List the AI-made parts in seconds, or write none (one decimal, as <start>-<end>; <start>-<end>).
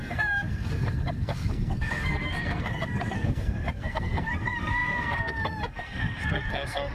0.0-6.9